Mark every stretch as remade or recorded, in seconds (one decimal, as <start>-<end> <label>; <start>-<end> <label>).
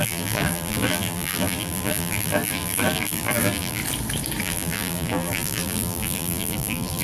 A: 0.0-3.8 remade; 3.8-4.4 recorded; 4.4-7.0 remade